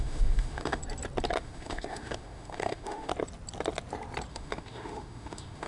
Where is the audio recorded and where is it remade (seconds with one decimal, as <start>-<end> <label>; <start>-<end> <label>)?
0.0-0.8 remade; 0.8-1.4 recorded; 1.4-3.1 remade; 3.1-4.3 recorded; 4.3-5.7 remade